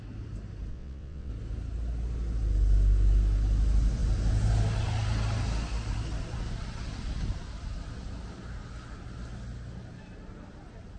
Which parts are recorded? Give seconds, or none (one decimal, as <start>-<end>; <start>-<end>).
0.0-0.7; 1.3-11.0